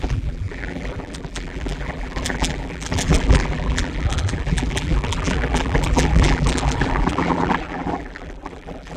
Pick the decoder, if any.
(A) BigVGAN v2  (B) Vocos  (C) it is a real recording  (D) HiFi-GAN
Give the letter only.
A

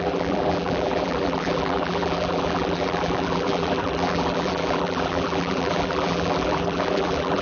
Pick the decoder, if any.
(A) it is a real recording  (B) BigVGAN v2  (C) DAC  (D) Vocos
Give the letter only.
B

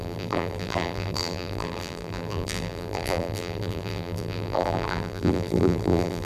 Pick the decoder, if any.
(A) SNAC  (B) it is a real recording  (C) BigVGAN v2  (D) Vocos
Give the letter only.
C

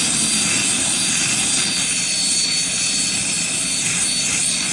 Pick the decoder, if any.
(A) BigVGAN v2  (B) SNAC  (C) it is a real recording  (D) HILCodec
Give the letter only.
C